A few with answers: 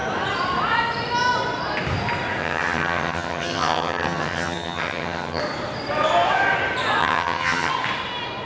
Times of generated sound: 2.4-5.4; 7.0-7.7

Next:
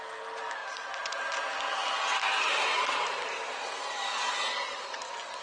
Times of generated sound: none

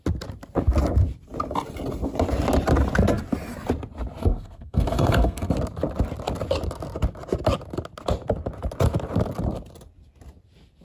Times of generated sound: 4.2-5.5

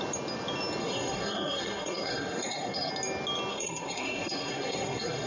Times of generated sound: 0.8-2.9; 3.5-5.3